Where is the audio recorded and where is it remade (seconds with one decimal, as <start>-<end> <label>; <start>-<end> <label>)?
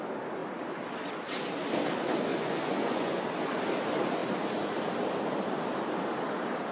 0.0-2.3 recorded; 2.3-3.2 remade; 3.2-6.7 recorded